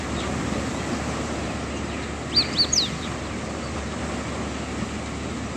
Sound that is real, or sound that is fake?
real